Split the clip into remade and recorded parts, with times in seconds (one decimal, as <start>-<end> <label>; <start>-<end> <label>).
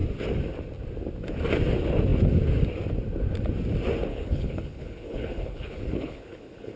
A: 0.0-4.1 recorded; 4.1-6.8 remade